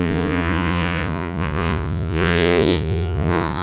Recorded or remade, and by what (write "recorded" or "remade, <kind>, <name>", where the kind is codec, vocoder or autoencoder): remade, vocoder, Vocos